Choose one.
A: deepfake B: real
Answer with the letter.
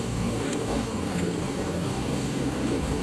A